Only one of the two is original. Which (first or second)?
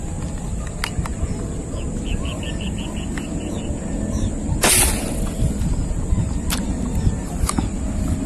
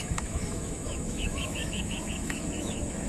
first